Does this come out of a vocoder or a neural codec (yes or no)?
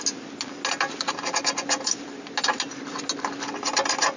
no